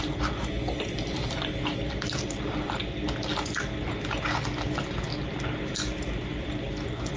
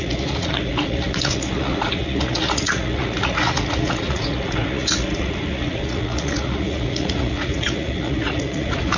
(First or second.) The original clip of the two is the first